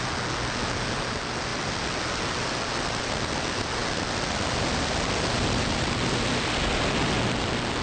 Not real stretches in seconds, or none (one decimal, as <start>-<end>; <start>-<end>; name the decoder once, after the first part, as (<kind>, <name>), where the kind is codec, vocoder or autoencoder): none